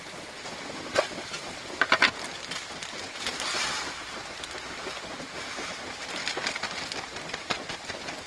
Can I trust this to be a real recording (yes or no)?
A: yes